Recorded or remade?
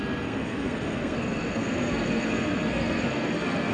remade